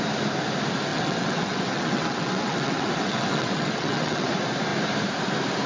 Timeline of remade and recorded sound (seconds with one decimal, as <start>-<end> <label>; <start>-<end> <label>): 0.0-0.9 recorded; 0.9-4.3 remade; 4.3-5.7 recorded